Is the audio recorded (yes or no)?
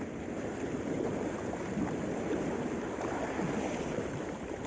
yes